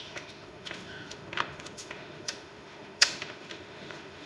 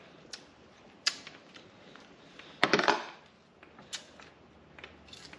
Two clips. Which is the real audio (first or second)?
second